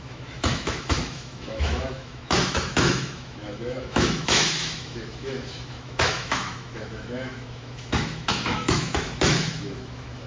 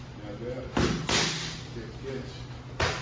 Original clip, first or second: second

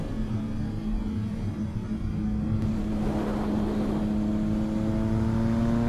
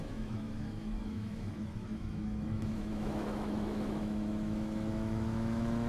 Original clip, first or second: first